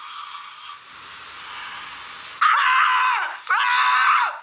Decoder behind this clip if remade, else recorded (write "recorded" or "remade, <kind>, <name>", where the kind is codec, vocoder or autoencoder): recorded